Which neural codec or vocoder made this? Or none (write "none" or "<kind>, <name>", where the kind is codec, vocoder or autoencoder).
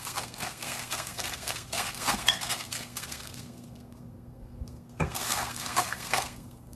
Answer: codec, SNAC